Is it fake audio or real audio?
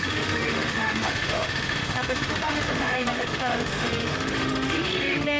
fake